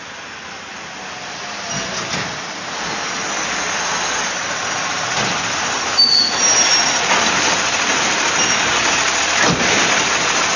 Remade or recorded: recorded